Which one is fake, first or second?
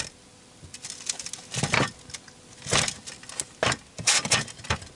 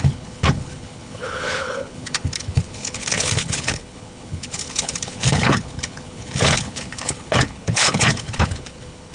second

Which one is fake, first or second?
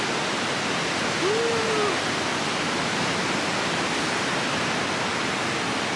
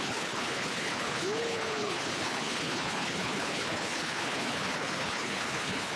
second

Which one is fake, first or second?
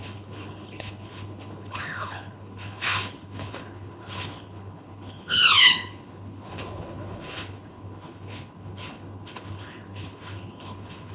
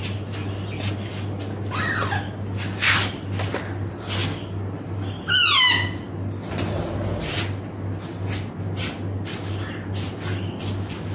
first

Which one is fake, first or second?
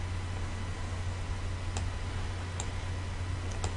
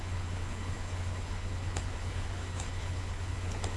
second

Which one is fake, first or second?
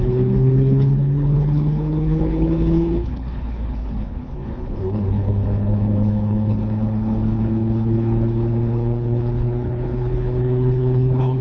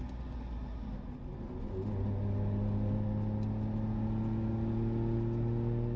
first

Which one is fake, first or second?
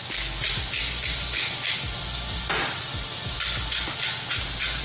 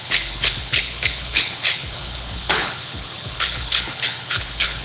second